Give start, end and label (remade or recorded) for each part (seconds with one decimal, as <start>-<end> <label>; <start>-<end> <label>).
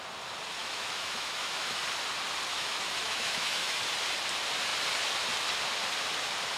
0.0-0.6 recorded; 0.6-1.8 remade; 1.8-2.5 recorded; 2.5-3.8 remade; 3.8-6.6 recorded